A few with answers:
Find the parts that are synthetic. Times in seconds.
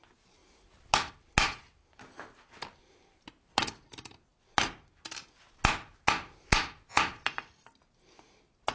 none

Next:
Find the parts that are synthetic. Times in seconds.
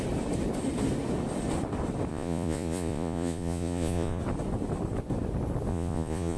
2.1-4.2 (vocoder, Vocos); 5.7-6.4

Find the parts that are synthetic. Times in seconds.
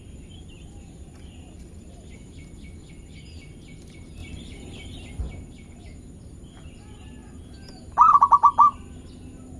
none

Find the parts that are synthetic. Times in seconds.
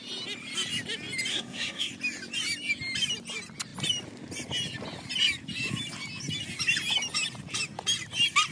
1.3-1.9 (codec, SNAC)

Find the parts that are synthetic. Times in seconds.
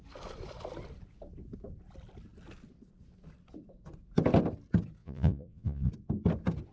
5.0-5.9 (vocoder, Vocos)